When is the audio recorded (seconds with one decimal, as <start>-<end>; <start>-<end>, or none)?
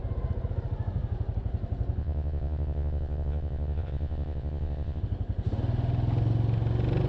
0.0-2.0; 5.0-7.1